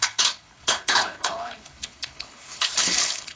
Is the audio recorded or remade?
remade